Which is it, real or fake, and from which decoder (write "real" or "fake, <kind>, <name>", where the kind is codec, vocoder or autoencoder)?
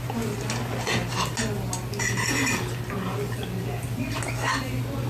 real